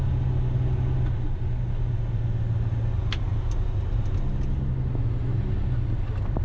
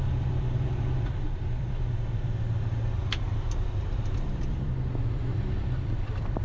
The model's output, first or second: second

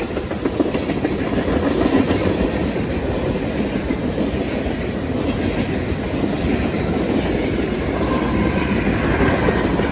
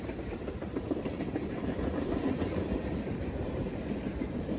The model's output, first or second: second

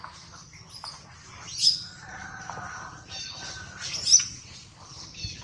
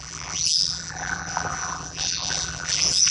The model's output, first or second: second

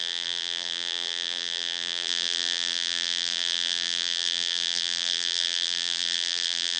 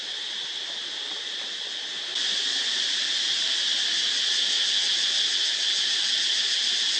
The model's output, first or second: first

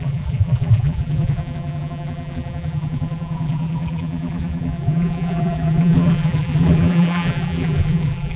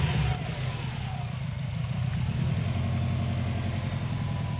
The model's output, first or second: first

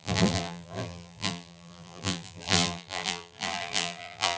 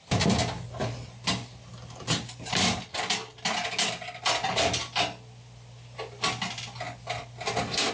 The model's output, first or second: first